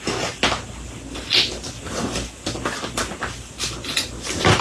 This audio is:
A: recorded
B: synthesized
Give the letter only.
A